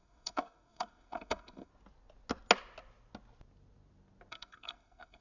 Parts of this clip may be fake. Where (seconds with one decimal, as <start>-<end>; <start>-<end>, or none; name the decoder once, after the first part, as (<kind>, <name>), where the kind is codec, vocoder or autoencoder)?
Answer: 0.0-1.7 (codec, SNAC); 4.3-5.2